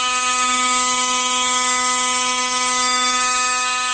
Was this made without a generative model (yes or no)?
no